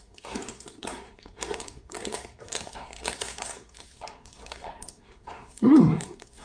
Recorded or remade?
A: remade